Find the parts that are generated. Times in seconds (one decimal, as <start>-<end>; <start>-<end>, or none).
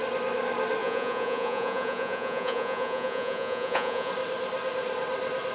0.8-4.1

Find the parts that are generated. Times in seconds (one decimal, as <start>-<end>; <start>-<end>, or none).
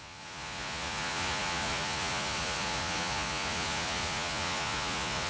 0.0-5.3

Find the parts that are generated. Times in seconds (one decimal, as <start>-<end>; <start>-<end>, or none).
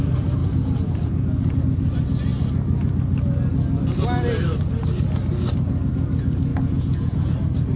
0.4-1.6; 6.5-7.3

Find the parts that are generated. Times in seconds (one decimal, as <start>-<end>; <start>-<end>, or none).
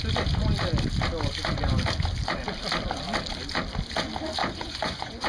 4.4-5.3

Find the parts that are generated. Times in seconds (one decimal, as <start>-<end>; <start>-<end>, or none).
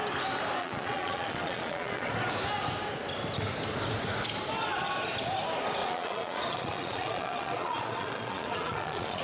0.6-2.1; 5.8-9.2